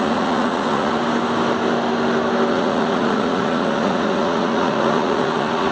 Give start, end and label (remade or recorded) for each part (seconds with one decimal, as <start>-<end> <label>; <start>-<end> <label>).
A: 0.0-1.0 remade; 1.0-2.5 recorded; 2.5-5.7 remade